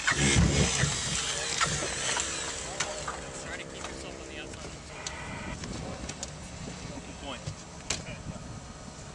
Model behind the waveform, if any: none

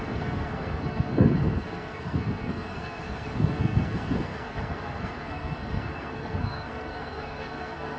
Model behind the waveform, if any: codec, SNAC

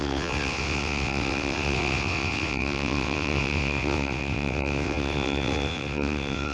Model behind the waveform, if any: vocoder, WaveNeXt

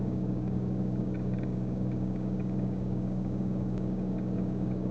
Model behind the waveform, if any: codec, DAC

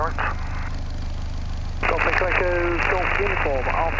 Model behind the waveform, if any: none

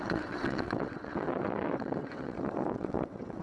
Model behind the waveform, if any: vocoder, WaveNeXt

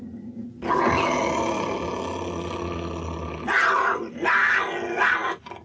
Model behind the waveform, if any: none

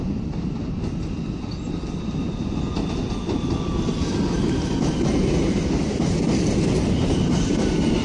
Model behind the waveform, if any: none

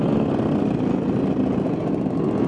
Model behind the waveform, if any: none